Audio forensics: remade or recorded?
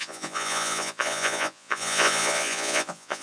remade